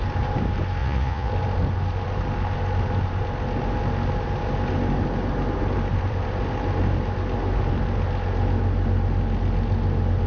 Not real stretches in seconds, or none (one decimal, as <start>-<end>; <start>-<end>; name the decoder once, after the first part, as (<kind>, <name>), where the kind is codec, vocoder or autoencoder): 0.8-1.3 (vocoder, Vocos)